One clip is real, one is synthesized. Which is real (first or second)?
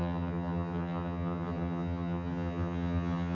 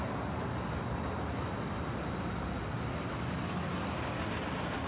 second